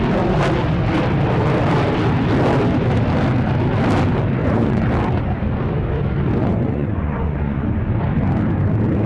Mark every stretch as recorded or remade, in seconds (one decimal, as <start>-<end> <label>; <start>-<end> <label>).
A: 0.0-4.4 recorded; 4.4-4.9 remade; 4.9-6.4 recorded; 6.4-8.0 remade; 8.0-9.1 recorded